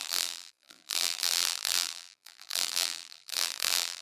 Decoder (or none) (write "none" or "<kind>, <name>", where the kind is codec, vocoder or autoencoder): vocoder, BigVGAN v2